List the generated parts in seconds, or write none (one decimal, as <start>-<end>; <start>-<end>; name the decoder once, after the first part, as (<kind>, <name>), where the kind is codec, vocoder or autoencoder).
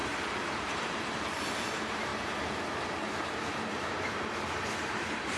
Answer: 0.0-2.1 (vocoder, BigVGAN v2); 3.0-5.4